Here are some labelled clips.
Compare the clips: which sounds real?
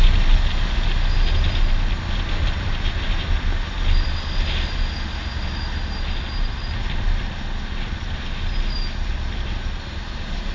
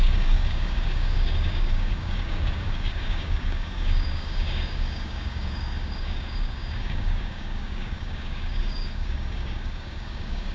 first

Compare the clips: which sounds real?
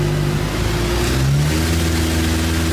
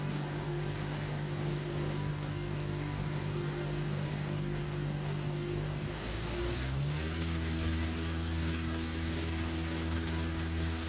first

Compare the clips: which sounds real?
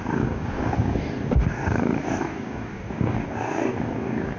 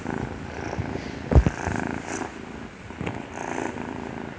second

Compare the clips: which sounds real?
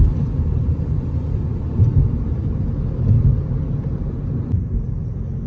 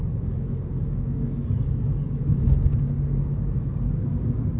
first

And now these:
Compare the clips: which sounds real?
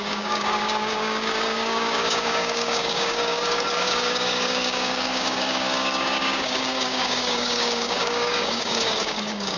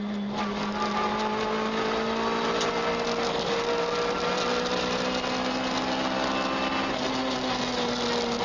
second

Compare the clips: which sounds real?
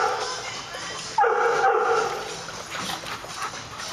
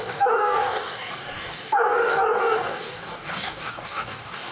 first